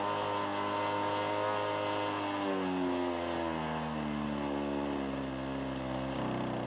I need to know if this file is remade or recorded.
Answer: recorded